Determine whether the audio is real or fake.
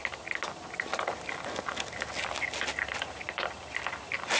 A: real